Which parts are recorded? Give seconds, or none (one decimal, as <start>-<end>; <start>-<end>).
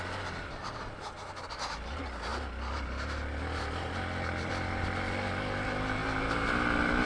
0.0-7.1